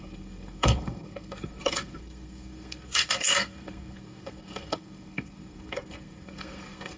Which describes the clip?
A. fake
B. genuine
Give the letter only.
A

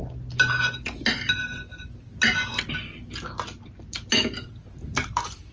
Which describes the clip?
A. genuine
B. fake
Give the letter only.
A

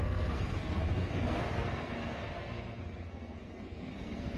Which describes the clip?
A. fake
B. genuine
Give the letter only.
A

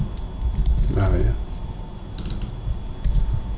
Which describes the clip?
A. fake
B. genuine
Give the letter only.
B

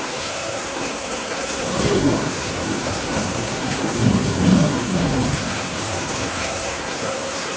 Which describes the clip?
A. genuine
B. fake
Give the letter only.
B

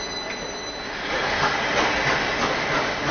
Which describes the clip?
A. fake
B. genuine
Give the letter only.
B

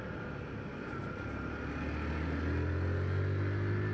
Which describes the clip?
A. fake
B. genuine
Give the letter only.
B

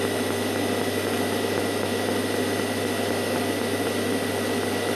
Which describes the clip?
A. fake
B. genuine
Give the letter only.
B